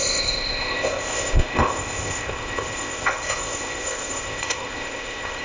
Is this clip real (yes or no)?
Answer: no